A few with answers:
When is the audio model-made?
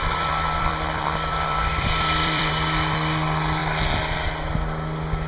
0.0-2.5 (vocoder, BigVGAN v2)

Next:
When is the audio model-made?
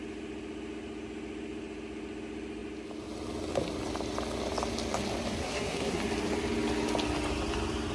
5.4-6.0 (codec, SNAC)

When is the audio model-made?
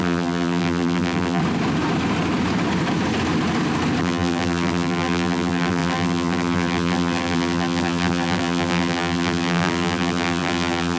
0.0-1.4 (vocoder, BigVGAN v2); 4.0-11.0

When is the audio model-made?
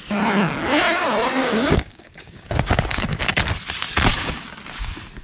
1.4-3.2 (codec, DAC); 4.1-4.6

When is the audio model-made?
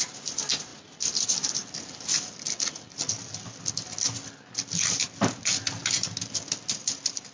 none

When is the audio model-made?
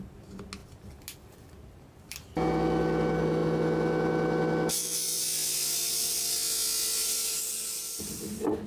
none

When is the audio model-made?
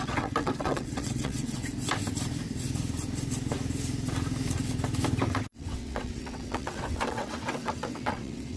0.0-1.6 (vocoder, WaveNeXt); 5.3-8.6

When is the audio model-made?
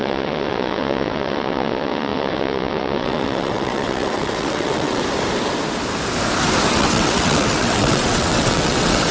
0.0-5.0 (vocoder, WaveNeXt); 6.7-9.1